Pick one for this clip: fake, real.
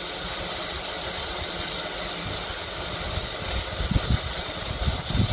real